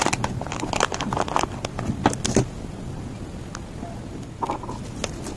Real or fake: real